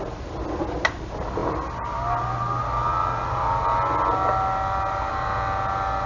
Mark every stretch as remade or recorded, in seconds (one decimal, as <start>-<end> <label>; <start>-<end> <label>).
0.0-6.1 recorded